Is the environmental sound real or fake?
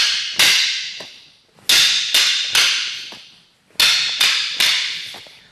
real